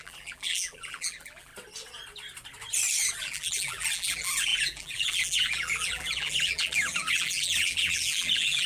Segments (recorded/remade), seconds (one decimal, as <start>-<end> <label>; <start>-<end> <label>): 0.0-1.5 remade; 1.5-3.2 recorded; 3.2-8.7 remade

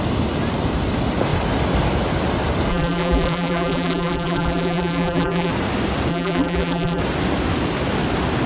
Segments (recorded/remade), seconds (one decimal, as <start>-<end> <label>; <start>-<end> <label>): 0.0-2.7 recorded; 2.7-5.5 remade; 5.5-6.1 recorded; 6.1-7.0 remade; 7.0-8.5 recorded

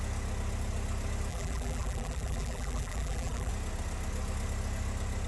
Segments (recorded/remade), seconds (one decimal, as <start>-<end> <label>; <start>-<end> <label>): 0.0-1.3 recorded; 1.3-3.5 remade; 3.5-5.3 recorded

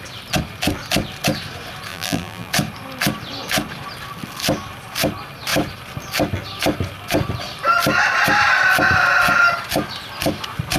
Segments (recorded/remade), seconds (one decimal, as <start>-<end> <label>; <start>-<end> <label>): 0.0-1.9 recorded; 1.9-2.5 remade; 2.5-10.8 recorded

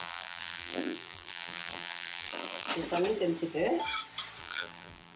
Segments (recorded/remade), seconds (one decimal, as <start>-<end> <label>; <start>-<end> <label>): 0.0-2.7 remade; 2.7-4.4 recorded; 4.4-5.2 remade

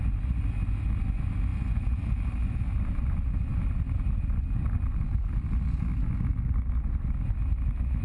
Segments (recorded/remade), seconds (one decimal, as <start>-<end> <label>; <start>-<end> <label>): 0.0-1.5 recorded; 1.5-3.1 remade; 3.1-8.0 recorded

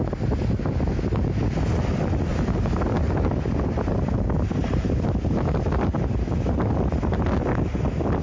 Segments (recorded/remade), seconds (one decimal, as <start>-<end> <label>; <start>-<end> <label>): 0.0-2.3 recorded; 2.3-5.1 remade; 5.1-8.2 recorded

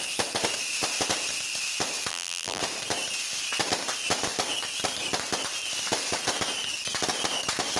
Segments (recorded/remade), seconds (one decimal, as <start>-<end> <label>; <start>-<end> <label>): 0.0-2.1 recorded; 2.1-2.6 remade; 2.6-7.8 recorded